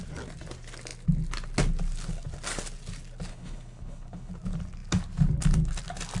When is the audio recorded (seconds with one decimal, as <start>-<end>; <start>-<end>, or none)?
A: 0.0-3.3; 4.3-6.2